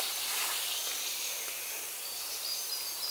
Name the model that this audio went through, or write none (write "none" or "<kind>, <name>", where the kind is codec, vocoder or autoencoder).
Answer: none